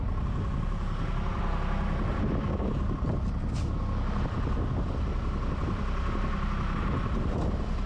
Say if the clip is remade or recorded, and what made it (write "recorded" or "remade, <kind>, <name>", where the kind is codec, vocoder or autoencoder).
recorded